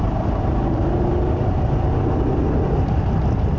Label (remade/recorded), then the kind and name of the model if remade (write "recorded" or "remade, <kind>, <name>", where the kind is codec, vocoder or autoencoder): recorded